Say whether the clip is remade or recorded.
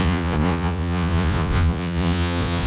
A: remade